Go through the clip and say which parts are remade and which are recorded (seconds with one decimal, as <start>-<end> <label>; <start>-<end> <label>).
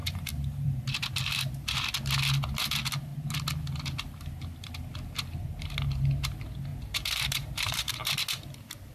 0.0-0.8 remade; 0.8-6.7 recorded; 6.7-7.9 remade; 7.9-8.9 recorded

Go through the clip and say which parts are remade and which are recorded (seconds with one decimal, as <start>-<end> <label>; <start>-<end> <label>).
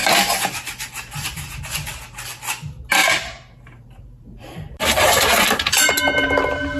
0.0-1.6 remade; 1.6-3.0 recorded; 3.0-5.9 remade; 5.9-6.8 recorded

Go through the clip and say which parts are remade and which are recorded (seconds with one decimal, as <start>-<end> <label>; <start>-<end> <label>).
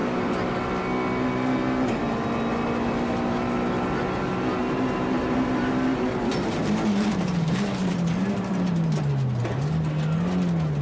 0.0-0.5 remade; 0.5-4.6 recorded; 4.6-9.0 remade; 9.0-10.8 recorded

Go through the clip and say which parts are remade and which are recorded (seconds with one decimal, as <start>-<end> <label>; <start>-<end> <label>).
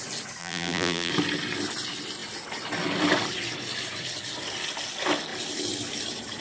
0.0-0.4 recorded; 0.4-1.1 remade; 1.1-6.4 recorded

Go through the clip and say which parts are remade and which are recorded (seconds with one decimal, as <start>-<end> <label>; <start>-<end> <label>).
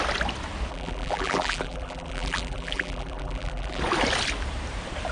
0.0-0.7 recorded; 0.7-3.8 remade; 3.8-5.1 recorded